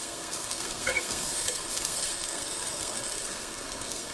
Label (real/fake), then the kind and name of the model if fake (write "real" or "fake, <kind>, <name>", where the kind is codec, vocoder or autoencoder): fake, codec, SNAC